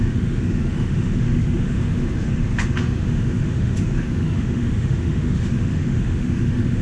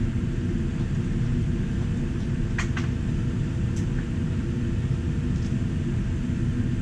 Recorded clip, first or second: second